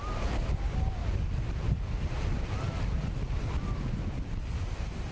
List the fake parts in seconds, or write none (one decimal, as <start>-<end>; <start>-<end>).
none